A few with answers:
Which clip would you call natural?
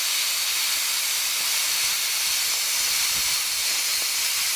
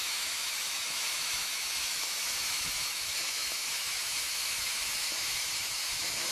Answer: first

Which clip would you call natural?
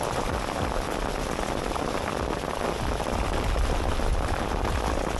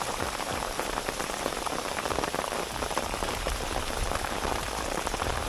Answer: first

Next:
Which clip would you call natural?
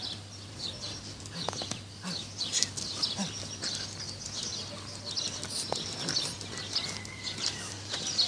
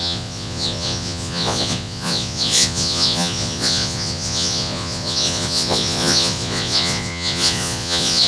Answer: first